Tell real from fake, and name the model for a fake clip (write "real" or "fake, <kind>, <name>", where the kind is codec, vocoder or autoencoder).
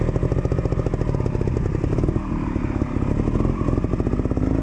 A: real